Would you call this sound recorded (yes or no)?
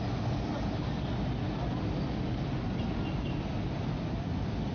yes